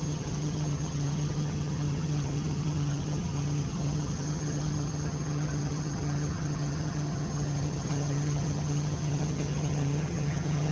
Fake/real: fake